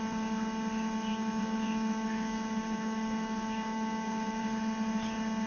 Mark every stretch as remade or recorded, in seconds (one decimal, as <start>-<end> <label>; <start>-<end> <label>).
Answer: 0.0-1.1 recorded; 1.1-4.4 remade; 4.4-5.5 recorded